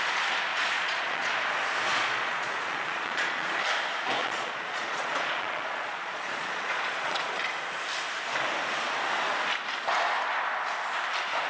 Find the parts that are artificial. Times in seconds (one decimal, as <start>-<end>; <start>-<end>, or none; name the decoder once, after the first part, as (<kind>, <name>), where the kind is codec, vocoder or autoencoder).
0.5-1.3 (vocoder, Vocos); 1.9-3.5; 4.2-7.3